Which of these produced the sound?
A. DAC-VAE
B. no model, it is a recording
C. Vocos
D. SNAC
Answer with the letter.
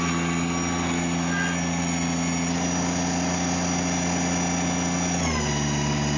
B